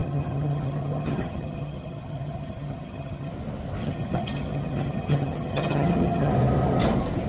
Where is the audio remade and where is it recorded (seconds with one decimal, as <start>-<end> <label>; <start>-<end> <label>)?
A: 0.0-3.3 remade; 3.3-3.8 recorded; 3.8-6.3 remade; 6.3-7.3 recorded